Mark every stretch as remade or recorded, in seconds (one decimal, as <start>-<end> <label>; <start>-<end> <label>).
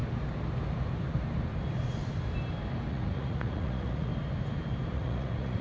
0.0-2.9 recorded; 2.9-4.1 remade; 4.1-4.9 recorded; 4.9-5.6 remade